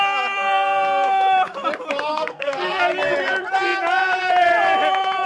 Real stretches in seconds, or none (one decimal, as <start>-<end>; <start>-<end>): 0.0-2.1; 2.8-5.3